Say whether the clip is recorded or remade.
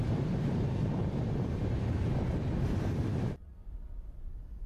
recorded